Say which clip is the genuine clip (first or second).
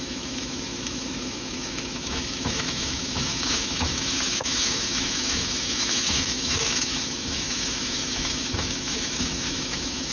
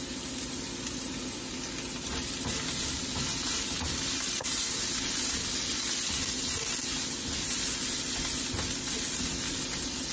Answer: second